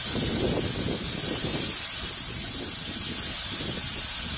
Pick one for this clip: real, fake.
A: real